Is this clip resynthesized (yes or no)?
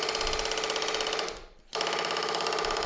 no